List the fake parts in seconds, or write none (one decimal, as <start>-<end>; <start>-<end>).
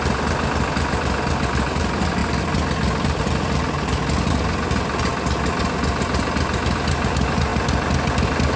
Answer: none